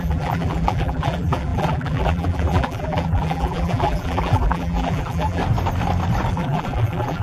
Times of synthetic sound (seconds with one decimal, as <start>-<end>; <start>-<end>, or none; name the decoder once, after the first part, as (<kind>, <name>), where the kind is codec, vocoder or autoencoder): 0.0-5.4 (vocoder, BigVGAN v2); 6.3-7.2